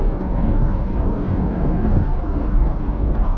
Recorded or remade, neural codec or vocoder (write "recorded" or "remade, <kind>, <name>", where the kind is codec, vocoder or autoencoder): remade, codec, DAC